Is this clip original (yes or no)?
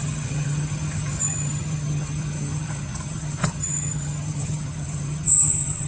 no